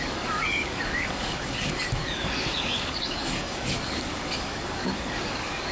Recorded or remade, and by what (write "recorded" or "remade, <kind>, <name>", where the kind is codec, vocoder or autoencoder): remade, codec, DAC